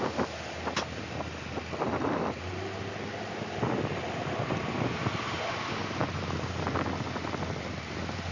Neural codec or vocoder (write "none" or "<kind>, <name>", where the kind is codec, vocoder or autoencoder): none